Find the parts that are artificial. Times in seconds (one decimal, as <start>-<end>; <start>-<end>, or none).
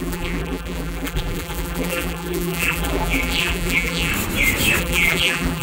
0.0-4.1; 4.8-5.6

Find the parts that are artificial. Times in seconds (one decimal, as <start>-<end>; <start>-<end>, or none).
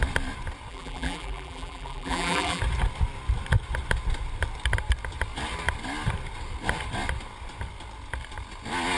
0.7-2.6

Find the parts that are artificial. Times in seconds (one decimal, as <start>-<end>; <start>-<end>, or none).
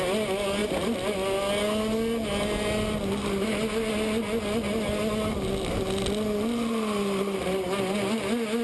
none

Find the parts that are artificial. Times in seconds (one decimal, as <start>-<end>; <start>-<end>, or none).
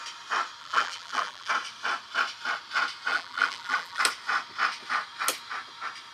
0.6-1.5; 3.1-4.0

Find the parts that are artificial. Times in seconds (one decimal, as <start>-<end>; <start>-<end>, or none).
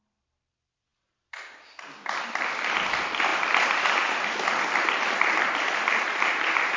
0.0-0.9; 2.2-6.8